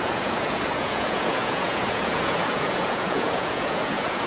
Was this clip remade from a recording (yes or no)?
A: yes